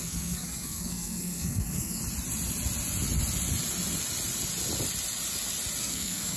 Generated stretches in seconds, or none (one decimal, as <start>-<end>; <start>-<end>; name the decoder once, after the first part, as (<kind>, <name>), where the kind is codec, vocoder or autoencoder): 0.0-2.0 (codec, SNAC); 5.8-6.4